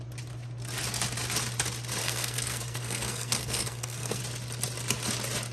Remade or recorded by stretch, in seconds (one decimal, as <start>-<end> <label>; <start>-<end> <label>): 0.0-2.0 recorded; 2.0-4.2 remade; 4.2-5.5 recorded